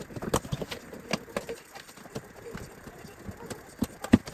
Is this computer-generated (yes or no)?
no